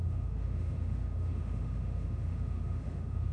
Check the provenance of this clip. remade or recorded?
remade